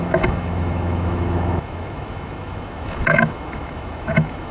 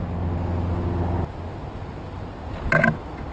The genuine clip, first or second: second